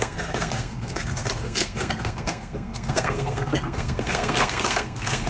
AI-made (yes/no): yes